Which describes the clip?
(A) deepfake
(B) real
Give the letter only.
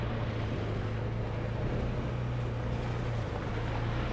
B